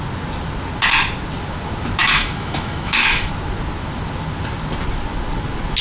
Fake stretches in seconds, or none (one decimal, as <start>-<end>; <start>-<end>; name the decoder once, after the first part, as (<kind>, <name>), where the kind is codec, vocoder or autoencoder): 2.0-3.3 (autoencoder, DAC-VAE)